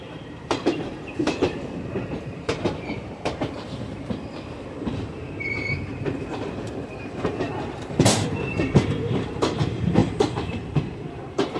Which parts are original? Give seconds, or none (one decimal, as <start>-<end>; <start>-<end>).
none